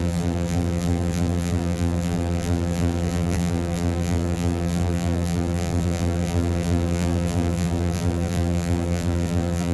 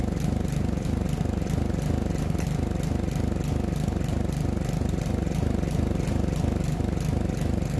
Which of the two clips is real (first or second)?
second